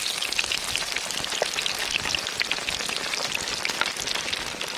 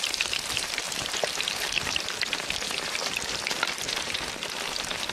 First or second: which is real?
first